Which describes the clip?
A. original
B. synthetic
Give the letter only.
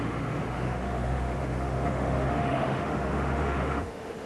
B